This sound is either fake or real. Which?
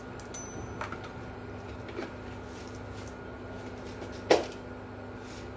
real